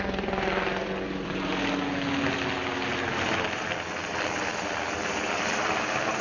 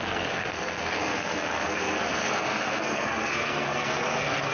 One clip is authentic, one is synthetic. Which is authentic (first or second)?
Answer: first